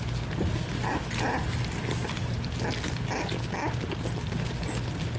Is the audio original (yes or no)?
yes